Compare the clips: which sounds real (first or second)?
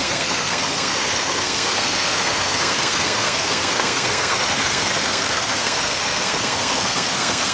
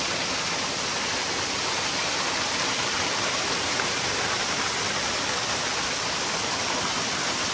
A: second